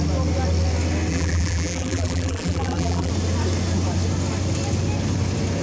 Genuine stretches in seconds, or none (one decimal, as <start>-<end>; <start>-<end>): 0.0-1.1; 3.1-5.6